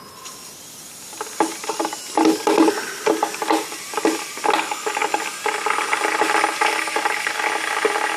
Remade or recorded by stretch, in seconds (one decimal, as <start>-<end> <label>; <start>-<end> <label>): 0.0-8.2 recorded